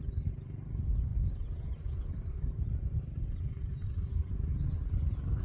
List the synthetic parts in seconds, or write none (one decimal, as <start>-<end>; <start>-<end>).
0.0-4.8